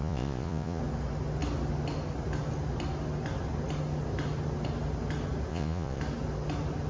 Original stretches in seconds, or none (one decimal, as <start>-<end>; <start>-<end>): 0.8-5.5; 6.0-6.9